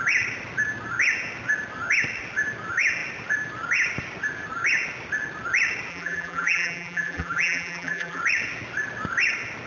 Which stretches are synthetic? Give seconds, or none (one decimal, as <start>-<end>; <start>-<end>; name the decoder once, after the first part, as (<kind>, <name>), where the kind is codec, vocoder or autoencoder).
5.9-8.2 (vocoder, BigVGAN v2)